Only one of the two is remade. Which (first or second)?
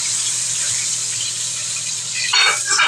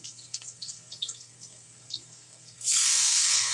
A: second